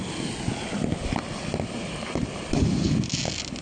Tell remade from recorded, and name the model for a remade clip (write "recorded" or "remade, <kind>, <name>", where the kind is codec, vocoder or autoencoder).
recorded